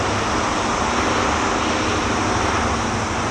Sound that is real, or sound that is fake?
real